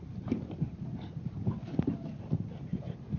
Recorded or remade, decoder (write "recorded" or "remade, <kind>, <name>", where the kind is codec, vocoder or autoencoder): remade, vocoder, BigVGAN v2